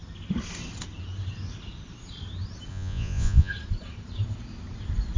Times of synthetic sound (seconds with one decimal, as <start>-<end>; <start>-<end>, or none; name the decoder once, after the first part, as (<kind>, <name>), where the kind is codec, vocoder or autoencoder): 2.7-3.5 (vocoder, Vocos)